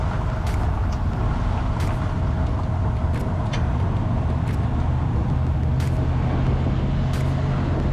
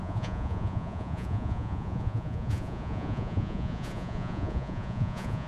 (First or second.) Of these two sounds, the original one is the first